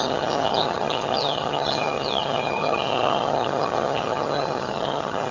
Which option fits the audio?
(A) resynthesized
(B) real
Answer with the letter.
A